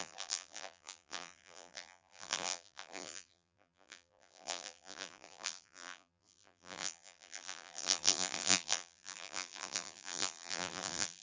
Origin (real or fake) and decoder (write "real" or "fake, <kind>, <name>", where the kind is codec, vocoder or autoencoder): fake, vocoder, BigVGAN v2